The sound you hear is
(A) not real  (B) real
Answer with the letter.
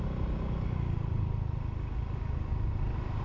B